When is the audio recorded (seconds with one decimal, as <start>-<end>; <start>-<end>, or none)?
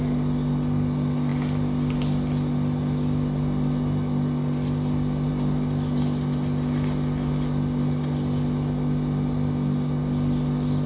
0.0-10.9